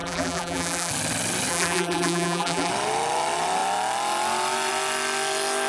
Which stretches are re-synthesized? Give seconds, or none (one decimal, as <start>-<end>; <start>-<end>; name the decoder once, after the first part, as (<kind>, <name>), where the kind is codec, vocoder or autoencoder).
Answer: 0.0-0.9 (vocoder, BigVGAN v2); 1.5-2.7